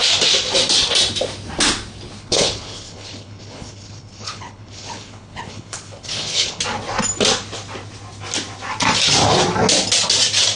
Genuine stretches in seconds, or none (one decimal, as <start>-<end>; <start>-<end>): 0.0-2.2; 6.6-10.6